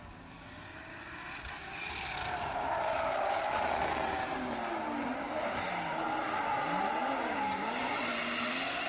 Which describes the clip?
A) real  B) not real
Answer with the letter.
A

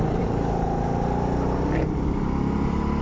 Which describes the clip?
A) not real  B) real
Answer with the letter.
B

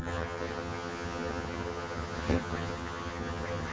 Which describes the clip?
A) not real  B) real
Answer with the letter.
A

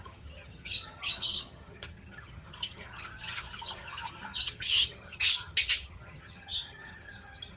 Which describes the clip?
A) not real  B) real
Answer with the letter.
A